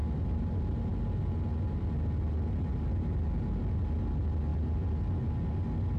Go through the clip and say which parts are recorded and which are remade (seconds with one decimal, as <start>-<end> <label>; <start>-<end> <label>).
0.0-0.5 remade; 0.5-6.0 recorded